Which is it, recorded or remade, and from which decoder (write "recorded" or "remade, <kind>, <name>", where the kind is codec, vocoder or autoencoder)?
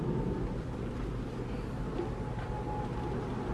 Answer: recorded